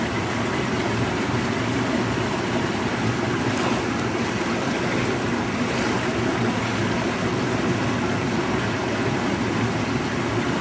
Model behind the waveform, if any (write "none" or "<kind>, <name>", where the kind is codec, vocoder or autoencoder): none